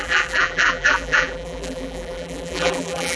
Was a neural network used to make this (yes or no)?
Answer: yes